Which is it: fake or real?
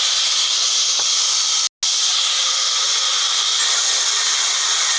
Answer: real